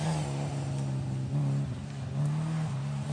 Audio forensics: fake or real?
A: real